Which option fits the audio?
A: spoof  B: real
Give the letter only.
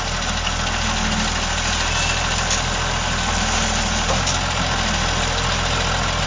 B